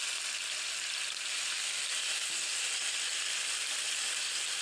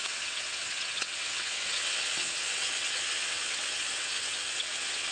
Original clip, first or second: first